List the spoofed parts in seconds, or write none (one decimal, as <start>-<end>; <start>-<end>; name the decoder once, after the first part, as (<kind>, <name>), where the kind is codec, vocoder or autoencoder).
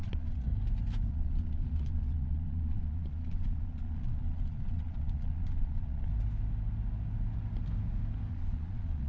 0.0-0.5 (vocoder, Vocos); 1.1-6.1; 8.3-9.1